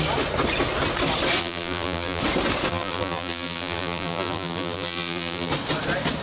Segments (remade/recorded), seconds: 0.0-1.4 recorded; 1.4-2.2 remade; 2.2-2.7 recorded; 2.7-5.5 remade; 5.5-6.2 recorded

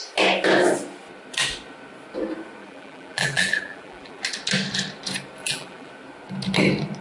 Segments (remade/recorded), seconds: 0.0-2.6 recorded; 2.6-4.2 remade; 4.2-5.4 recorded; 5.4-5.9 remade; 5.9-7.0 recorded

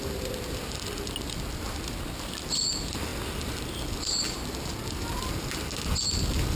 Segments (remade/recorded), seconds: 0.0-6.6 recorded

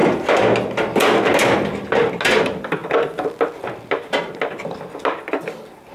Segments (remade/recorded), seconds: 0.0-2.8 recorded; 2.8-3.5 remade; 3.5-5.9 recorded

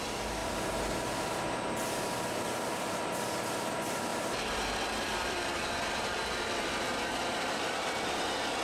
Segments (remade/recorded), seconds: 0.0-4.1 recorded; 4.1-8.0 remade; 8.0-8.6 recorded